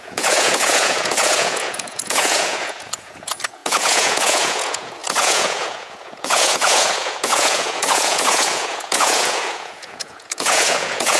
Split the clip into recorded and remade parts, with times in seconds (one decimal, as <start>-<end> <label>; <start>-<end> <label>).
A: 0.0-11.2 remade